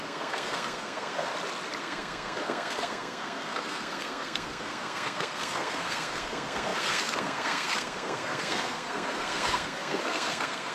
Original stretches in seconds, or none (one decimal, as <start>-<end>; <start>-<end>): 1.3-1.8

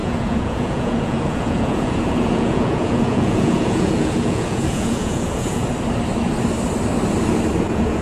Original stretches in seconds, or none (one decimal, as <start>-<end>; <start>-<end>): 5.6-7.6

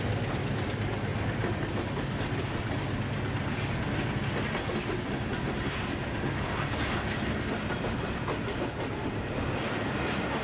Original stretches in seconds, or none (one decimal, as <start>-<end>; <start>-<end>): 0.0-1.1; 2.6-10.4

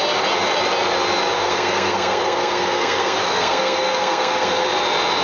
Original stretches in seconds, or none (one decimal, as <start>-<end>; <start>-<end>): 0.0-1.4; 4.5-5.2